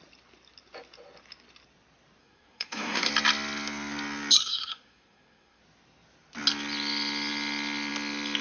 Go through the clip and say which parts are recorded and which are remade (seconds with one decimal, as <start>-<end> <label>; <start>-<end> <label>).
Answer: 0.0-2.2 recorded; 2.2-3.1 remade; 3.1-4.4 recorded; 4.4-5.6 remade; 5.6-8.4 recorded